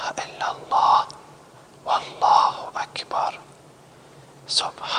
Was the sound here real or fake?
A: fake